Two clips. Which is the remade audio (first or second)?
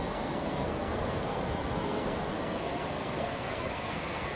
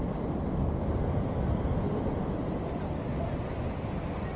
first